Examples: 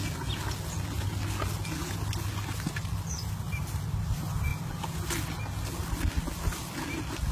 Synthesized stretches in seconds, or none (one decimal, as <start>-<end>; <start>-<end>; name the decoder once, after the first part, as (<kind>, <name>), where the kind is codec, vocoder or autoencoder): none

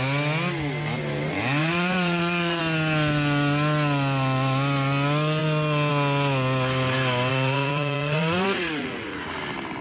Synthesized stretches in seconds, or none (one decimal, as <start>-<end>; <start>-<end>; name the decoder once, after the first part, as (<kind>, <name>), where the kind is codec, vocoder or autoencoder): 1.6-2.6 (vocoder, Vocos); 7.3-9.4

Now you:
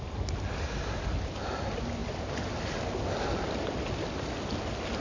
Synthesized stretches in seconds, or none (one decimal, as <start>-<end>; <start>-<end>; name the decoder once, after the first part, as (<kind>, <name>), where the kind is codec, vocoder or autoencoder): none

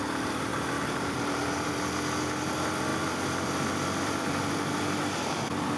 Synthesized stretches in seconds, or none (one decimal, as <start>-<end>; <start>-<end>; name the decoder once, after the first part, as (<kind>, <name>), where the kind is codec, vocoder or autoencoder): 0.5-1.7 (vocoder, BigVGAN v2); 2.9-4.4